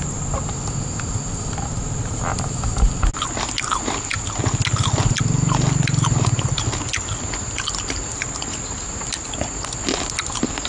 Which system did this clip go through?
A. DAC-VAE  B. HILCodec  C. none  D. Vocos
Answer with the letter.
C